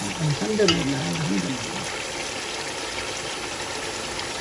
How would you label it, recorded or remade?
recorded